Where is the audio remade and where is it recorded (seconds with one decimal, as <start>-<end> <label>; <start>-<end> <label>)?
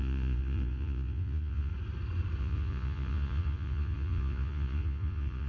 0.0-1.7 remade; 1.7-2.4 recorded; 2.4-5.5 remade